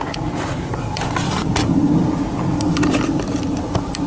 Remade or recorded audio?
recorded